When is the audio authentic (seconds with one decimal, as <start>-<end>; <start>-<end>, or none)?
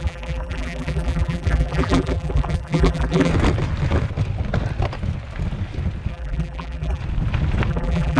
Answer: 3.3-6.1; 7.0-7.7